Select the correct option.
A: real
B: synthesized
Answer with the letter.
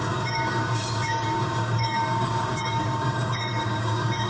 B